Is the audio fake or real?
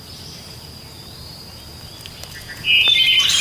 real